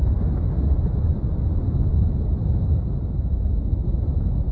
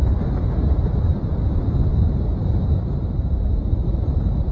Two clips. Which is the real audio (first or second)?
first